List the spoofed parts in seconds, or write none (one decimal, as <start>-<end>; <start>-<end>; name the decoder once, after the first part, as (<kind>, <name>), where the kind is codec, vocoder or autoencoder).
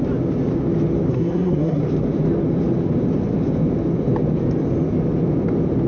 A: 1.1-1.8 (codec, SNAC)